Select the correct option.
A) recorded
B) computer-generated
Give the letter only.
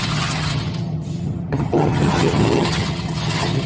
B